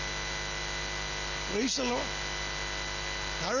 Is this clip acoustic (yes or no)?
yes